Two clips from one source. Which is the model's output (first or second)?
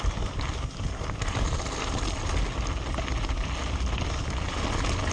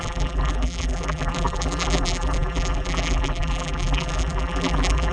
second